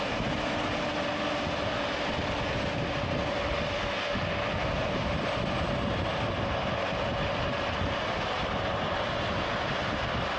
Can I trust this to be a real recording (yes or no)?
yes